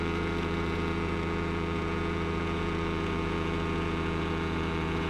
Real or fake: fake